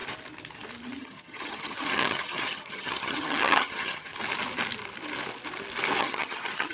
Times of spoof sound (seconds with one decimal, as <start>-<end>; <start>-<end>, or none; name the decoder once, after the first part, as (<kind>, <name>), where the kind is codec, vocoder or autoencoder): 1.0-4.1 (vocoder, HiFi-GAN); 6.0-6.7